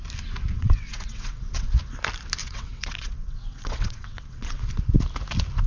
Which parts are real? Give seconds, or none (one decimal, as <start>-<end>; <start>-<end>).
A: 0.0-0.5; 1.7-2.4; 4.6-5.7